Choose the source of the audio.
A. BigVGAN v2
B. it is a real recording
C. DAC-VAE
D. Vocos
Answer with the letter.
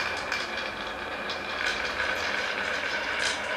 A